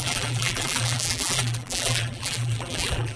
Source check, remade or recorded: remade